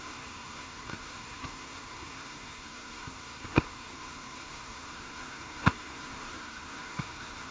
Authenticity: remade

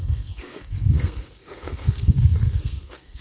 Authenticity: remade